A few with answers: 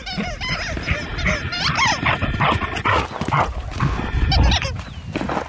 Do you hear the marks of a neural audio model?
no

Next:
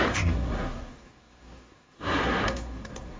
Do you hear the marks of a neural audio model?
yes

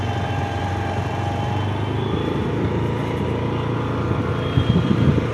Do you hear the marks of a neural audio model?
no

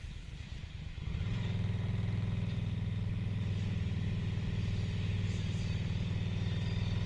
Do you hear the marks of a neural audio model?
no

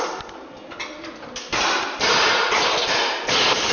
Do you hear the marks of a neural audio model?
no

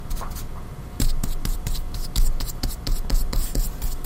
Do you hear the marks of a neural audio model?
no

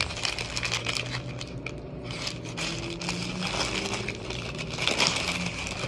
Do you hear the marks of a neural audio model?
no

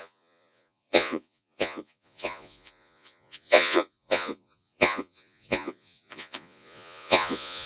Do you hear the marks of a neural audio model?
yes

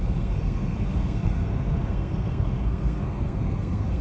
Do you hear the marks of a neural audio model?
yes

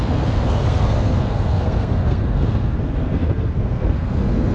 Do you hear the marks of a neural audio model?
yes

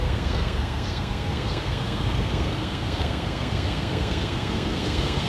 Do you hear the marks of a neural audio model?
yes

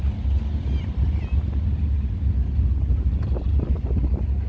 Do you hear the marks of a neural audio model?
no